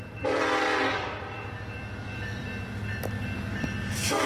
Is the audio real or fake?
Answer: fake